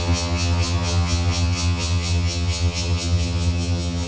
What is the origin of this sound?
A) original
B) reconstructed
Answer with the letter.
B